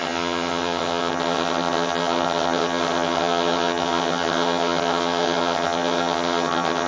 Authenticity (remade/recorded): remade